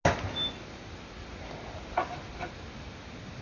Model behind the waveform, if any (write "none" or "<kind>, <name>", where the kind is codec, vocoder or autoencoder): none